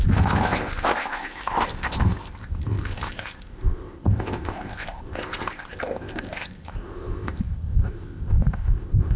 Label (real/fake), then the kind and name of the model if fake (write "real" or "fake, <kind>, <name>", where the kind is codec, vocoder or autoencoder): fake, codec, ZipCodec